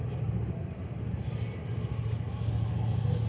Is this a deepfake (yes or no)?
no